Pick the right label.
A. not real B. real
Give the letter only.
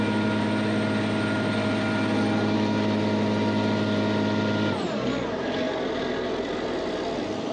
B